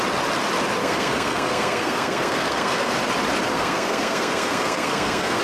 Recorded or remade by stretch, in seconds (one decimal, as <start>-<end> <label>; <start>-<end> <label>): 0.0-0.8 recorded; 0.8-2.9 remade; 2.9-3.5 recorded; 3.5-5.4 remade